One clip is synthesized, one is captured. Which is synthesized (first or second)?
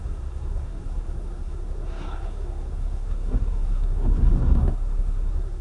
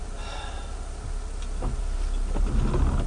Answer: first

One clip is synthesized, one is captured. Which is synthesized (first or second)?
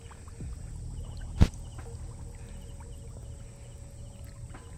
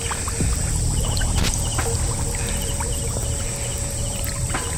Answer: second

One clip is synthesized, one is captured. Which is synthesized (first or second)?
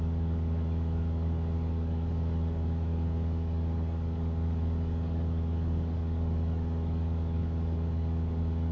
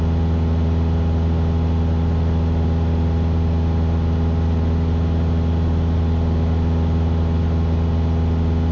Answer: first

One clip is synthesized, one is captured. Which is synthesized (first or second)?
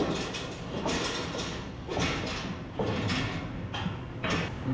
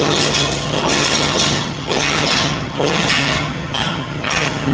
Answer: second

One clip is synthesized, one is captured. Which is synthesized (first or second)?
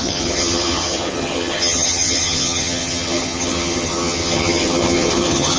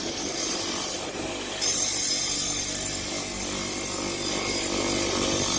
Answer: first